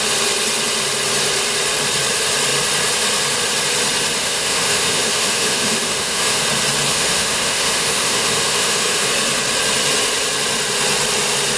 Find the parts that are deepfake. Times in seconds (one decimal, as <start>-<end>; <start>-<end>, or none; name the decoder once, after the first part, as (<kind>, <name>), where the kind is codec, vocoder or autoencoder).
4.2-6.4 (autoencoder, DAC-VAE); 6.9-9.1